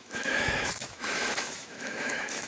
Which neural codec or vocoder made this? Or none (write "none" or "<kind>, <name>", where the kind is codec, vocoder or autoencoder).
autoencoder, DAC-VAE